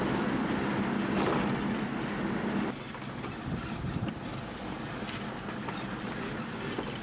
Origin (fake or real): real